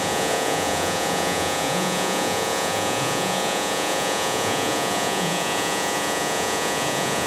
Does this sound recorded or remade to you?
remade